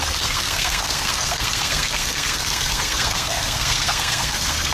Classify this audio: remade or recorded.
remade